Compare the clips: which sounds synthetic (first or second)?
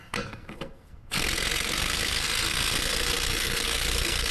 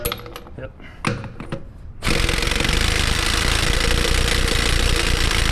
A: first